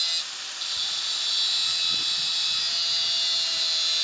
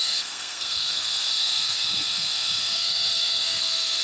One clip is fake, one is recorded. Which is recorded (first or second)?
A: first